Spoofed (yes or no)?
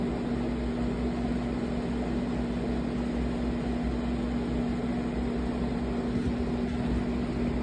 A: no